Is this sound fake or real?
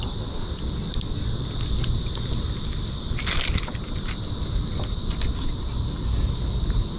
real